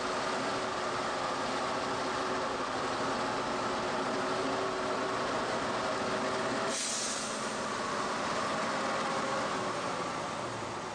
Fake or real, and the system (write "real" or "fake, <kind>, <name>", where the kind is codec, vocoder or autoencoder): real